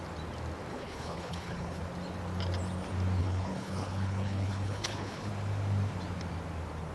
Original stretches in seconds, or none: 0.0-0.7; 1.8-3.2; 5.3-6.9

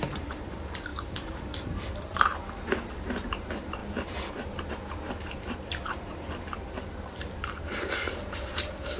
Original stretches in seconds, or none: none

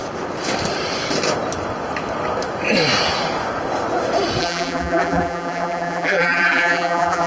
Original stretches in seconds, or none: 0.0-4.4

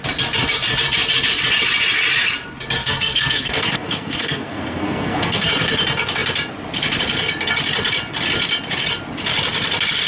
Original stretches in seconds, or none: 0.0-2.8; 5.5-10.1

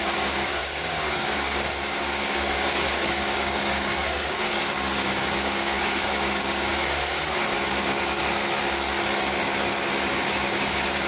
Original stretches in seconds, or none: 8.2-10.1